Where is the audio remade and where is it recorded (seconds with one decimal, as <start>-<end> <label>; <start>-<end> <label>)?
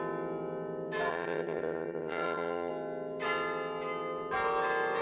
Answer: 0.0-1.1 recorded; 1.1-2.7 remade; 2.7-5.0 recorded